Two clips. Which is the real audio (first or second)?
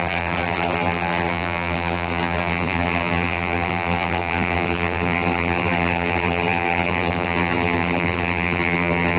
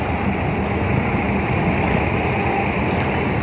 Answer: second